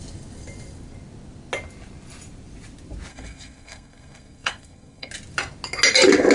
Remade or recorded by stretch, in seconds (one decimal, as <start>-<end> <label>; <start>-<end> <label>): 0.0-3.1 recorded; 3.1-5.1 remade; 5.1-6.3 recorded